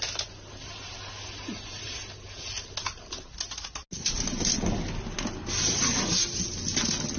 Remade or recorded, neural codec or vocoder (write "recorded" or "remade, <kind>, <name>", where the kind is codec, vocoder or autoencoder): recorded